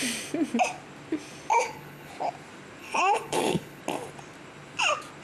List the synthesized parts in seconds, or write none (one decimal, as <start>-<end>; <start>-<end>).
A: 1.5-2.1; 2.8-3.8